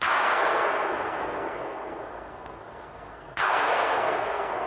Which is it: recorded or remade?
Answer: remade